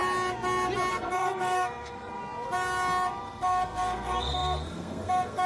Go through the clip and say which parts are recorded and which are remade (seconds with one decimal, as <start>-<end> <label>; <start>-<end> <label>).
0.0-0.9 recorded; 0.9-2.2 remade; 2.2-3.2 recorded; 3.2-5.5 remade